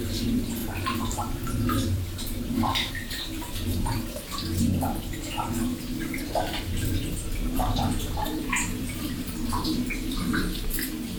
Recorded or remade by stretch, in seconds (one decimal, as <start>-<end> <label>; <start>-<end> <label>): 0.0-4.7 remade; 4.7-5.2 recorded; 5.2-11.2 remade